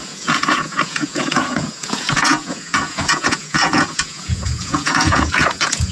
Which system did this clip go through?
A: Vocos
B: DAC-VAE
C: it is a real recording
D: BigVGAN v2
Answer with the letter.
A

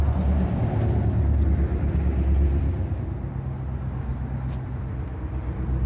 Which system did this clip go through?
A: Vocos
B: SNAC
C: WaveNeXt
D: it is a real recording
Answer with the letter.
D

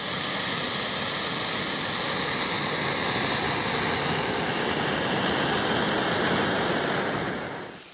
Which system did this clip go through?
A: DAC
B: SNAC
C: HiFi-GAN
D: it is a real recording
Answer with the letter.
D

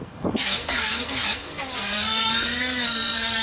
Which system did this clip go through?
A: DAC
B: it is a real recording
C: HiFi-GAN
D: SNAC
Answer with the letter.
D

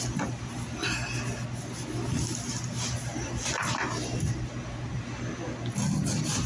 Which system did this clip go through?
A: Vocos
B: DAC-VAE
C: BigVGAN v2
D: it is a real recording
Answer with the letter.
D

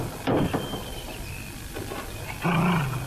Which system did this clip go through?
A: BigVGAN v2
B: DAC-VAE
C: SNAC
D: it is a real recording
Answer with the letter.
A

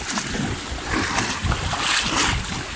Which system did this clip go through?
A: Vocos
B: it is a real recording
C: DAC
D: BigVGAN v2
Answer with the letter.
B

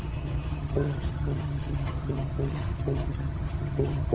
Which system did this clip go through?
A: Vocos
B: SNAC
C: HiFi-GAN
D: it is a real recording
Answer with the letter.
C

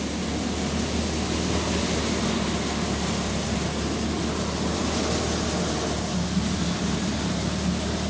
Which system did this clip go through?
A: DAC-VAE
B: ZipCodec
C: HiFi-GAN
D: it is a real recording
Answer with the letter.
D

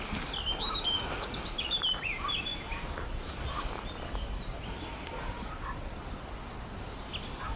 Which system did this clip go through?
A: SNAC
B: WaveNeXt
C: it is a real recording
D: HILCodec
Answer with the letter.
C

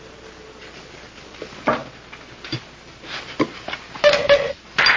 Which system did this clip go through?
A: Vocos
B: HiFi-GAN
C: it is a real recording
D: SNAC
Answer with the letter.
C